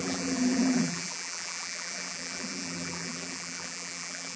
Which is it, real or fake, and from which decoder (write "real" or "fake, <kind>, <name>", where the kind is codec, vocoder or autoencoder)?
fake, vocoder, BigVGAN v2